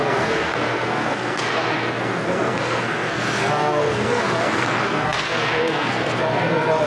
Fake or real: fake